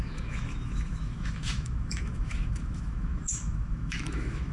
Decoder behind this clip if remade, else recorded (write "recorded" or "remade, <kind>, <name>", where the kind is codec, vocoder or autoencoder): remade, autoencoder, DAC-VAE